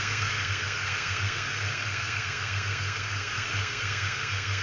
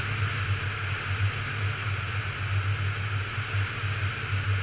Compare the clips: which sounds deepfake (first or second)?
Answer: first